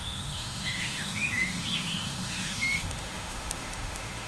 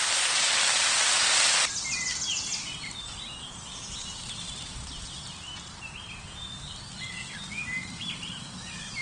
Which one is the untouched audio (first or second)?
second